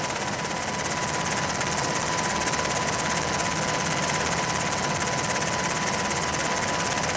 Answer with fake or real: real